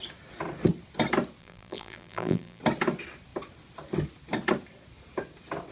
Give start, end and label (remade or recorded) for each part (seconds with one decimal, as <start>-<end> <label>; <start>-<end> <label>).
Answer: 0.0-1.4 recorded; 1.4-2.6 remade; 2.6-5.7 recorded